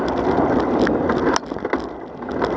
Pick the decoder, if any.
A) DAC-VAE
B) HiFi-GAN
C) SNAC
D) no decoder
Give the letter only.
D